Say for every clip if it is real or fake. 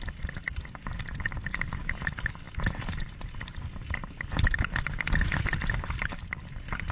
real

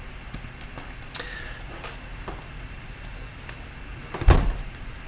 real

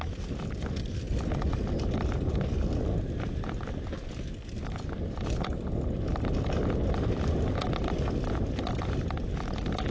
real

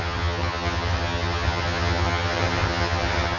fake